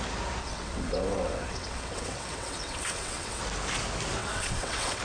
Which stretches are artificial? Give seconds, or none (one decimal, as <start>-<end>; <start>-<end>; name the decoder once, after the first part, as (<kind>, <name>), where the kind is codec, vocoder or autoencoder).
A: 0.4-3.4 (vocoder, WaveNeXt); 4.2-5.0

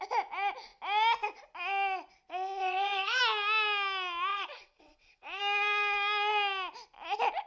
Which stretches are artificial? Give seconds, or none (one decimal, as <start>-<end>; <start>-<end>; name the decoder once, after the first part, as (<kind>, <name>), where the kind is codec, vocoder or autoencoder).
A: 2.6-3.2 (vocoder, WaveNeXt); 4.3-5.4